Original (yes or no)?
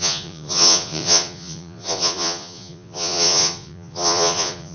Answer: no